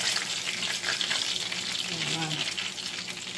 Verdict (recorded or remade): recorded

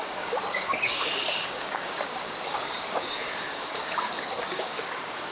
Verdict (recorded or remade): remade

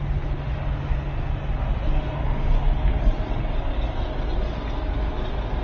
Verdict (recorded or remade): recorded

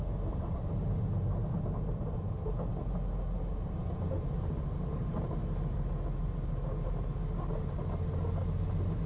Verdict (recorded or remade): recorded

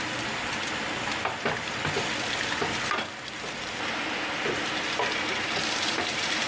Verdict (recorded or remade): recorded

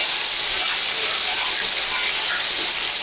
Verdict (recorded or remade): recorded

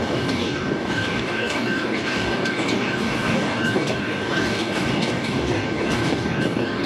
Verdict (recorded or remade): remade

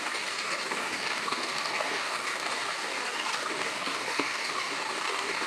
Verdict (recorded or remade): remade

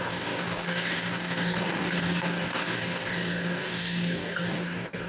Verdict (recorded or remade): remade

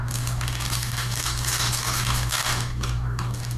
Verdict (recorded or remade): remade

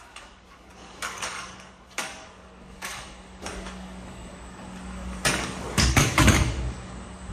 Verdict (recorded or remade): remade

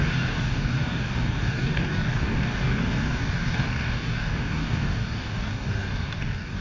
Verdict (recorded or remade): remade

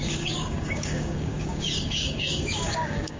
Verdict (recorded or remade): remade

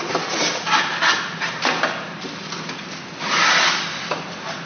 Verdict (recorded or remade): recorded